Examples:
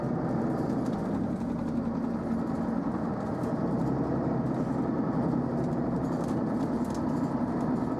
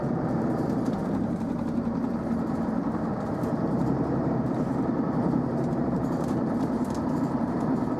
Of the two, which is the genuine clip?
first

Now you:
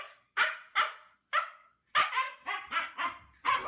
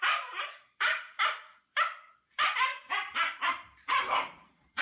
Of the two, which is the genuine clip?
first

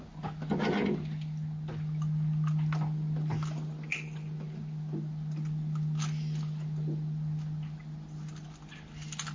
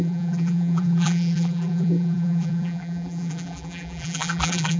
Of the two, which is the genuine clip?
first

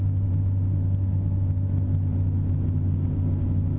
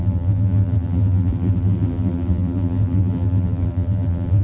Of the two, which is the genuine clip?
first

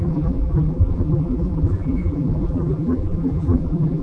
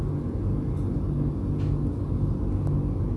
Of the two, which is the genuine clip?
second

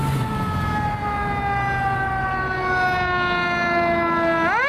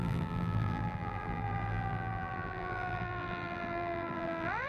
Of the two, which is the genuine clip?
first